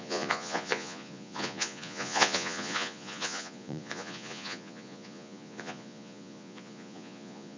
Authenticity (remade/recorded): remade